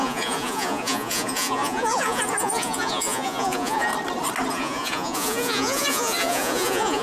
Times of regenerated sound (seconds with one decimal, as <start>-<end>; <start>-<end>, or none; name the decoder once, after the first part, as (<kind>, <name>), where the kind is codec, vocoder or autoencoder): 0.0-3.9 (vocoder, Vocos); 4.5-7.0